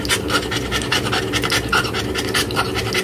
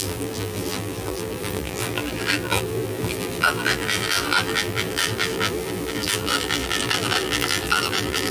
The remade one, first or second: second